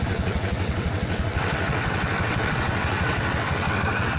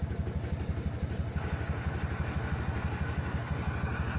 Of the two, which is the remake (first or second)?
first